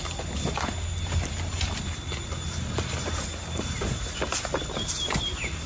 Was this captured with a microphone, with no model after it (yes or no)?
yes